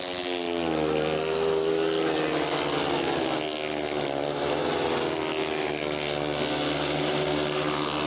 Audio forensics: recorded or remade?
recorded